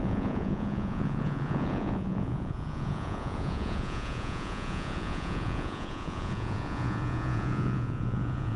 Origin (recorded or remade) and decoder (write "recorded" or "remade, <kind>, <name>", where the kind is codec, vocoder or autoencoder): remade, vocoder, Vocos